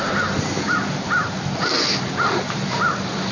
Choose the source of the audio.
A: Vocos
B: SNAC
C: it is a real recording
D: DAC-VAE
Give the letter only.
C